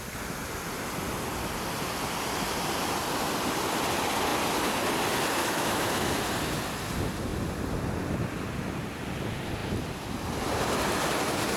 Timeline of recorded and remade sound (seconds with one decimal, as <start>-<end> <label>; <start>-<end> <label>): 0.0-5.4 recorded; 5.4-6.1 remade; 6.1-11.6 recorded